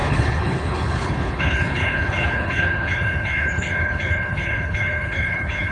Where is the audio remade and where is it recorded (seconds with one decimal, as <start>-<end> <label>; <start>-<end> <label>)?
0.0-5.7 remade